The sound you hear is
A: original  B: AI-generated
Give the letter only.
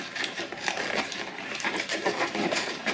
B